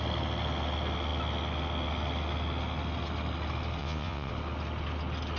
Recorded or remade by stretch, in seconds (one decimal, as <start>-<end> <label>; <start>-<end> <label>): 0.0-3.8 recorded; 3.8-4.3 remade; 4.3-5.4 recorded